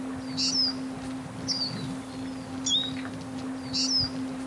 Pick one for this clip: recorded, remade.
recorded